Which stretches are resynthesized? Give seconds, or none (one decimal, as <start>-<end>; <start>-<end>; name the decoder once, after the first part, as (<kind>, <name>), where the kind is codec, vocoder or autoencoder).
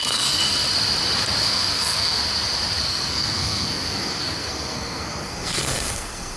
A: 0.0-0.4 (codec, SNAC); 1.4-2.2; 2.8-6.4